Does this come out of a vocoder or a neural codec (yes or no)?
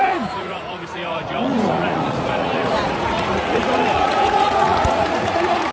yes